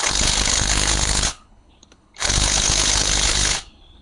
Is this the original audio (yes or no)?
no